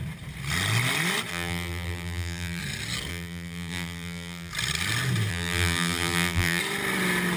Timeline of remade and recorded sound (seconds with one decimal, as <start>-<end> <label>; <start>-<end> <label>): 0.0-1.3 recorded; 1.3-2.6 remade; 2.6-3.1 recorded; 3.1-4.5 remade; 4.5-5.3 recorded; 5.3-6.6 remade; 6.6-7.4 recorded